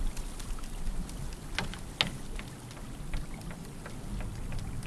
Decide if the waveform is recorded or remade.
recorded